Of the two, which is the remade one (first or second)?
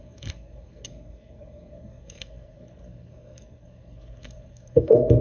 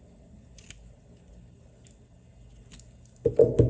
first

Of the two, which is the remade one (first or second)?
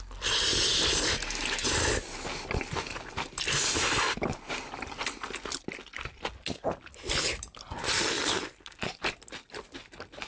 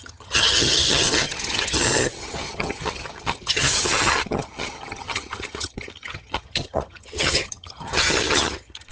second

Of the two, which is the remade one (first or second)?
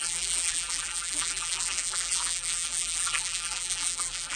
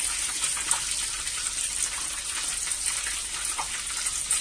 first